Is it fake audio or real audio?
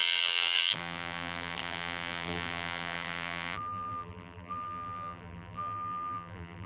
fake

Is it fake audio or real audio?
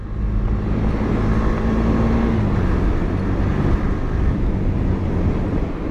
real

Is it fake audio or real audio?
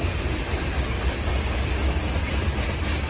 real